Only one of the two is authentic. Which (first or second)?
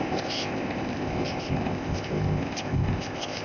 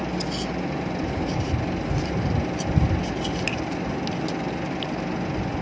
second